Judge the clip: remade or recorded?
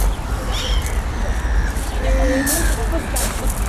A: remade